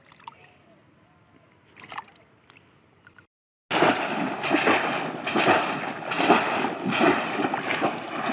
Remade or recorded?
recorded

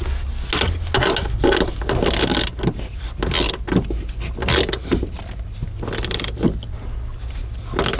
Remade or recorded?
recorded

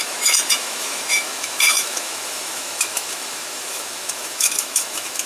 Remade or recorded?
remade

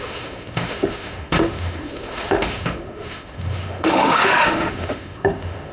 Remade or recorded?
remade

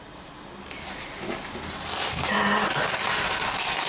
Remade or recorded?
recorded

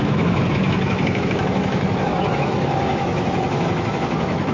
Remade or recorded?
remade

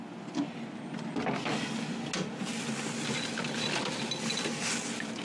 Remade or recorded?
recorded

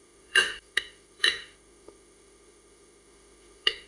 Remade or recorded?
remade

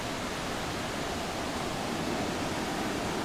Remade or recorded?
recorded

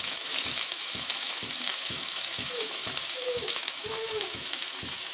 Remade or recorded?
remade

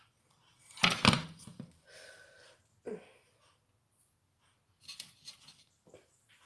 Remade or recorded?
recorded